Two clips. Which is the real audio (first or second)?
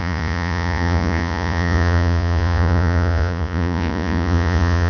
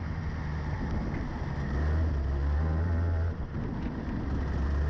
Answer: second